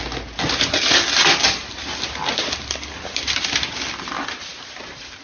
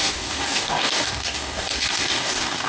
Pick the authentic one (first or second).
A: first